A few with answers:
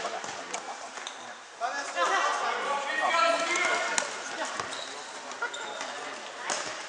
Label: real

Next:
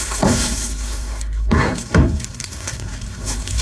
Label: fake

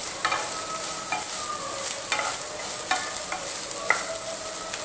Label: real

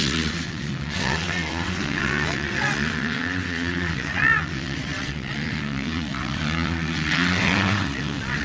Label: fake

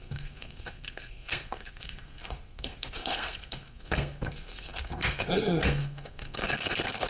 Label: fake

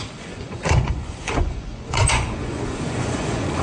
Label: fake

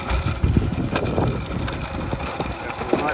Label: real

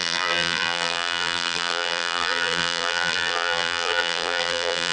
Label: fake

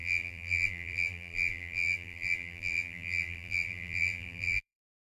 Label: fake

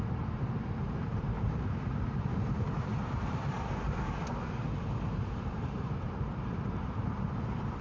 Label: fake